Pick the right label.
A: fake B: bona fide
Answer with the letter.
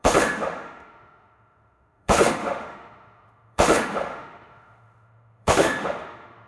A